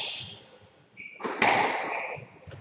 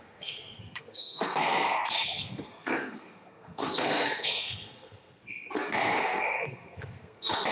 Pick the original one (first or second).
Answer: first